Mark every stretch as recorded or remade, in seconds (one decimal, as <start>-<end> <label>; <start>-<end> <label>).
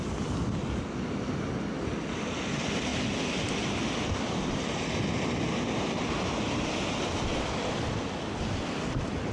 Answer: 0.0-9.3 recorded